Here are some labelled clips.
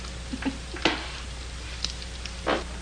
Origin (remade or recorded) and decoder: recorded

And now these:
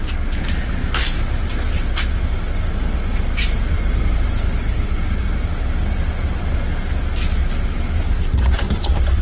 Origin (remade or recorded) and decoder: recorded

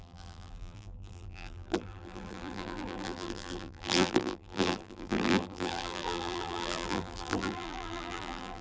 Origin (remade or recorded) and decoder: remade, vocoder, BigVGAN v2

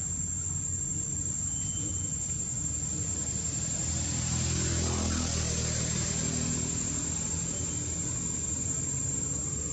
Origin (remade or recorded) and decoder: recorded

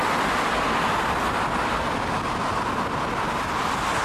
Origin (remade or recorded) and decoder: recorded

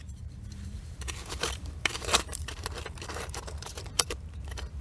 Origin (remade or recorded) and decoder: remade, vocoder, BigVGAN v2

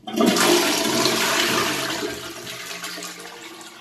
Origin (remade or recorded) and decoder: recorded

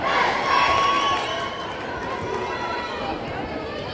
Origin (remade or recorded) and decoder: remade, vocoder, BigVGAN v2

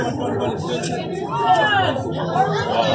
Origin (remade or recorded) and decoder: remade, vocoder, BigVGAN v2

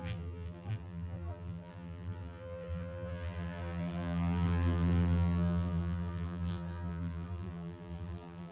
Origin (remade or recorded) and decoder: remade, vocoder, BigVGAN v2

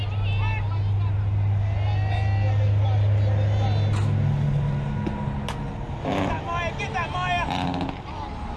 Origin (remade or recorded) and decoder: recorded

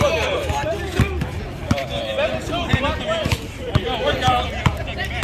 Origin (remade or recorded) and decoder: remade, vocoder, BigVGAN v2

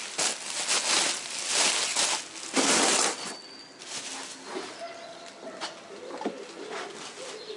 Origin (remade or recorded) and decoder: recorded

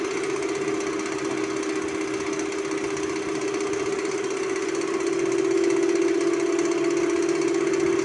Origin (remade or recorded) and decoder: recorded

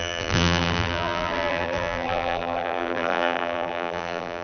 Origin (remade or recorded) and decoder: remade, vocoder, BigVGAN v2